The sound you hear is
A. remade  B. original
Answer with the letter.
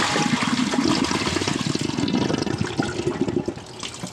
B